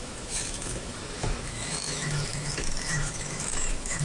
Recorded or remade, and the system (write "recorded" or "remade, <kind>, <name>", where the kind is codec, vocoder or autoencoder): remade, autoencoder, DAC-VAE